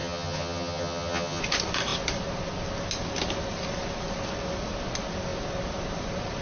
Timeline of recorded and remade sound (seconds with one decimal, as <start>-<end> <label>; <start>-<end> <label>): 0.0-1.4 remade; 1.4-6.4 recorded